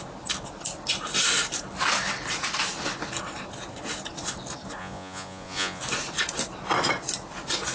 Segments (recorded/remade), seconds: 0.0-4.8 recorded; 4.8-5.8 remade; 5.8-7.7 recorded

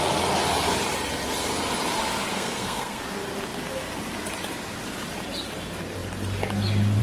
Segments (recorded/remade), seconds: 0.0-2.3 recorded; 2.3-3.0 remade; 3.0-7.0 recorded